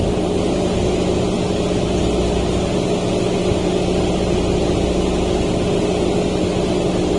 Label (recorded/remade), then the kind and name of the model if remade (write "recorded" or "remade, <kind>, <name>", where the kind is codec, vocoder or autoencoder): recorded